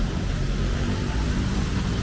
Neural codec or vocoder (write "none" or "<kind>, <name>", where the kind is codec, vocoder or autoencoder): vocoder, BigVGAN v2